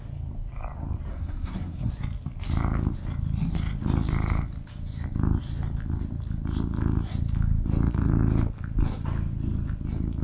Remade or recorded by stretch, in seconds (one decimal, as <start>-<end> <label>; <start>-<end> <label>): 0.0-1.1 recorded; 1.1-1.9 remade; 1.9-10.2 recorded